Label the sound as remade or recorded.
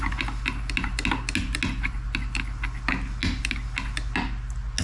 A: recorded